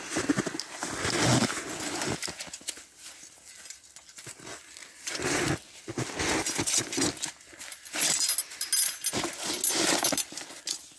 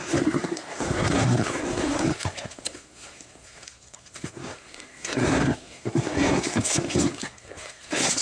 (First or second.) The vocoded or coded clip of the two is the second